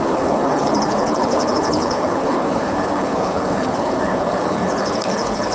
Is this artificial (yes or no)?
yes